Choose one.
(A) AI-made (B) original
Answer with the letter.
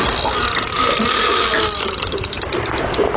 B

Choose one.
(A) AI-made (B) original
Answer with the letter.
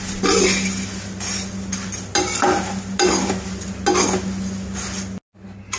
B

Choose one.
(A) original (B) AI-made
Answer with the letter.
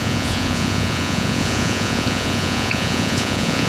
B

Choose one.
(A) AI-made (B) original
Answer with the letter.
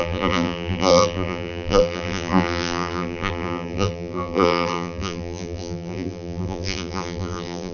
A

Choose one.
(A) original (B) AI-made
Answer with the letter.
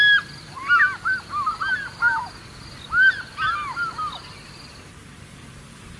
A